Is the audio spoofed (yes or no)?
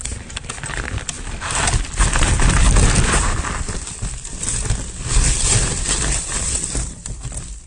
yes